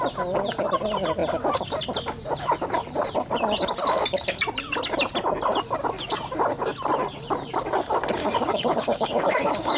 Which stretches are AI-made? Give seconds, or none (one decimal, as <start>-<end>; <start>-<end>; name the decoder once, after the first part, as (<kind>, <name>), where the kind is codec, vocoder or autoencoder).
8.2-9.8 (codec, DAC)